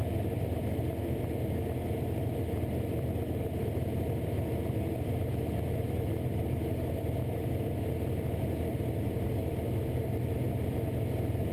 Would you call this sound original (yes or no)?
yes